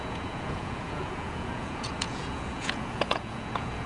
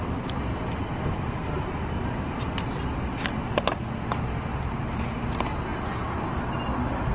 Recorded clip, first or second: second